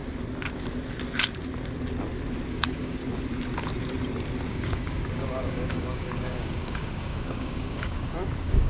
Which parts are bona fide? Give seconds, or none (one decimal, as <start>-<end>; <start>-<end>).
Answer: 0.0-2.5; 3.0-4.5